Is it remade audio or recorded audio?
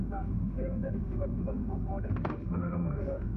remade